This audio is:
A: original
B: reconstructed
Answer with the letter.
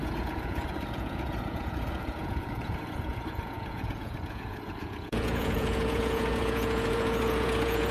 B